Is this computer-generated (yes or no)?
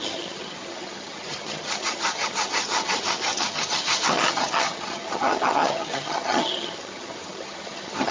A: yes